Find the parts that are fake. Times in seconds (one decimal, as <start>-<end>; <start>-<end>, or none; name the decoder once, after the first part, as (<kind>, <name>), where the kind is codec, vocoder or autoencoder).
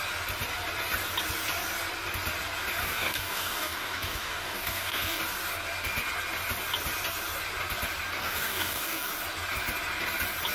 2.8-5.2 (codec, DAC); 8.2-9.1